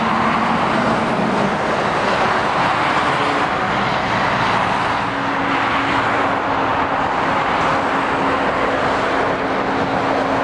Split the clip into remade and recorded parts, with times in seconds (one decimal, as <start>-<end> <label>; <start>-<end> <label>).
0.0-10.4 recorded